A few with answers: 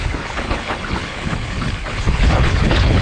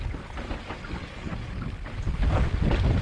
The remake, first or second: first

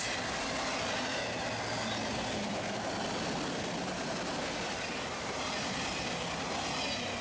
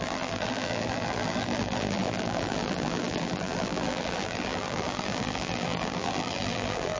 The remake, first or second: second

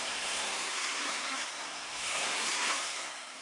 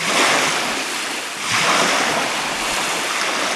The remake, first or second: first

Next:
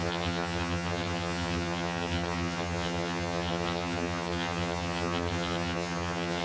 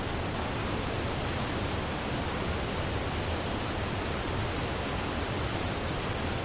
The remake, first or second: first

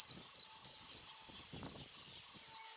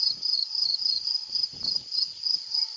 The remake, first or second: second